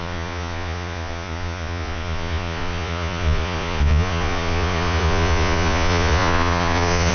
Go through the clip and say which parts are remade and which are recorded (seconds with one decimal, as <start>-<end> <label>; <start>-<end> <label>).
0.0-7.1 remade

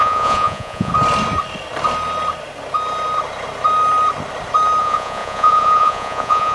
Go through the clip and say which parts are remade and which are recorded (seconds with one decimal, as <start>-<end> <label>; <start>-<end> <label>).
0.0-0.9 remade; 0.9-4.8 recorded; 4.8-6.5 remade

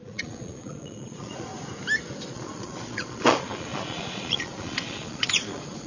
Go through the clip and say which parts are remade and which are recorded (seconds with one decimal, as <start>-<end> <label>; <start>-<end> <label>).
0.0-1.5 remade; 1.5-2.3 recorded; 2.3-5.9 remade

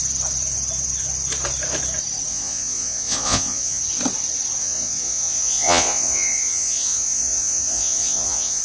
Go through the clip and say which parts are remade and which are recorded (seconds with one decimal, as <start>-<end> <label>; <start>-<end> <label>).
0.0-2.3 recorded; 2.3-3.8 remade; 3.8-4.6 recorded; 4.6-8.6 remade